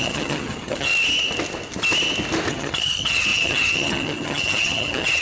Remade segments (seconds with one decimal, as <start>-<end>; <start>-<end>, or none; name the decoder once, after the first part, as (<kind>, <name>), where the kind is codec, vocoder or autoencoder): 0.0-0.9 (vocoder, HiFi-GAN); 2.5-5.2

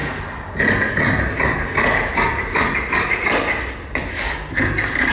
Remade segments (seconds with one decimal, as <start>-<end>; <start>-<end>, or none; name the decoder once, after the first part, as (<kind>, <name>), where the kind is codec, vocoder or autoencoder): 2.3-3.3 (vocoder, BigVGAN v2)